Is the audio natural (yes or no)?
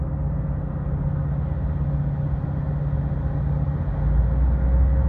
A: yes